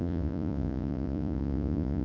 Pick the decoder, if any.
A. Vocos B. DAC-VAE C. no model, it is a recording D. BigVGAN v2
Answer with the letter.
A